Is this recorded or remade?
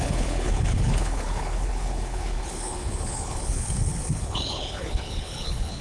remade